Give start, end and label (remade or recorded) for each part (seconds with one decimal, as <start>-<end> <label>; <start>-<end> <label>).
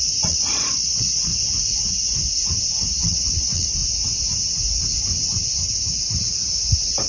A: 0.0-1.3 remade; 1.3-2.9 recorded; 2.9-3.8 remade; 3.8-7.1 recorded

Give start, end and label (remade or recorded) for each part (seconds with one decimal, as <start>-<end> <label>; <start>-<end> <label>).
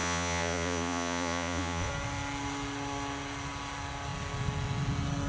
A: 0.0-1.9 remade; 1.9-5.3 recorded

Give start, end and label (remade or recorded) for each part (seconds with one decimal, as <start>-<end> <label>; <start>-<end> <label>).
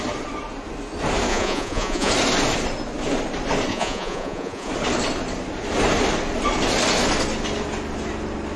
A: 0.0-1.3 recorded; 1.3-2.1 remade; 2.1-3.7 recorded; 3.7-4.7 remade; 4.7-8.6 recorded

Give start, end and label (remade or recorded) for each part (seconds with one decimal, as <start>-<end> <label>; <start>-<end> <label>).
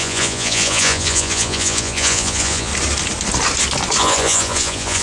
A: 0.0-2.7 remade; 2.7-4.0 recorded; 4.0-5.0 remade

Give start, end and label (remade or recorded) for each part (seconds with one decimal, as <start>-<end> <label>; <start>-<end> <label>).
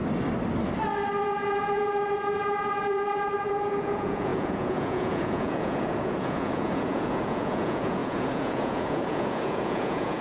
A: 0.0-1.2 recorded; 1.2-10.2 remade